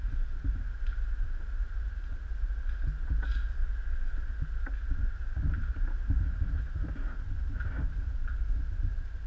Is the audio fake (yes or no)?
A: no